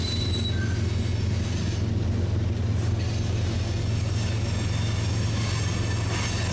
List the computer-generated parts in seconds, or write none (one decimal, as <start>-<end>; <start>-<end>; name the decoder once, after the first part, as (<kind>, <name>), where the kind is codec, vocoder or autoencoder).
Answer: none